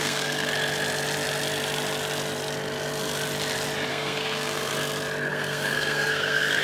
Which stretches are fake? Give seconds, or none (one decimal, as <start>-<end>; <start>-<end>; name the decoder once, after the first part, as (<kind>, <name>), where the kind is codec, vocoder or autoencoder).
0.0-0.5 (codec, SNAC); 3.9-4.7; 5.3-6.6